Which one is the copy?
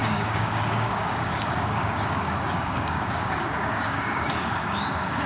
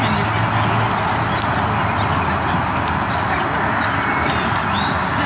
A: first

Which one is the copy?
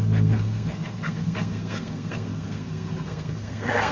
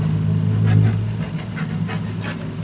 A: first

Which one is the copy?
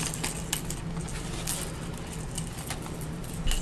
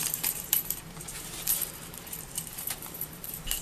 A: second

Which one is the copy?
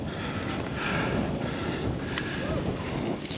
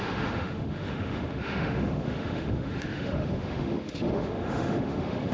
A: second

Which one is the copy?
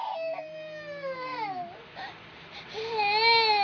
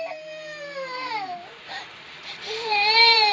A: second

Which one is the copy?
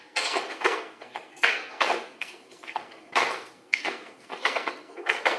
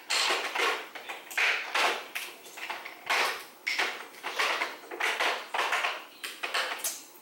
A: first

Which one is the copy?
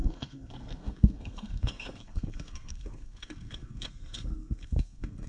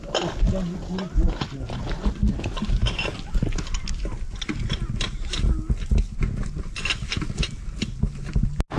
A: first